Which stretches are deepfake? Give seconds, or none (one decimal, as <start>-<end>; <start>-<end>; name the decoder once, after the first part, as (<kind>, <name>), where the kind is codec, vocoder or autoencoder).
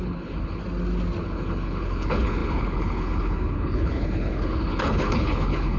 0.0-0.6 (codec, HILCodec); 1.2-5.8